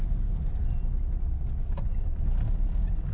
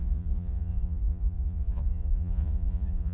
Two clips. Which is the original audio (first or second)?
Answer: first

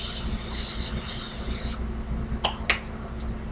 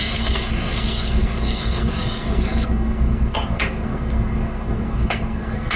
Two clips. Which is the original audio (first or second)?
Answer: first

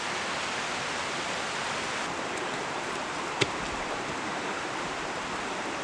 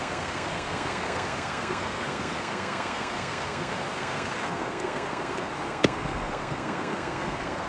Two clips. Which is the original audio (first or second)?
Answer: first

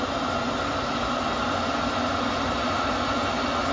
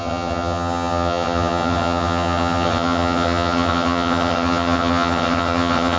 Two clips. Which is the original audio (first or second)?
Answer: first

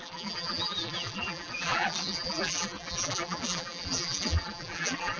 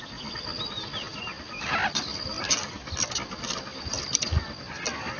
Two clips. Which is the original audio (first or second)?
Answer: second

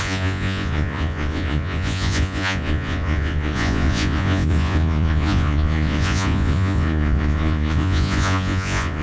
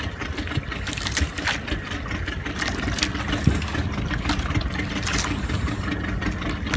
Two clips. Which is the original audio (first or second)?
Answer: second